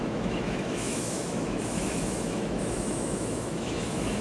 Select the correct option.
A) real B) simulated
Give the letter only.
B